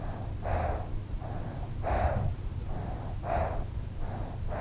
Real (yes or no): yes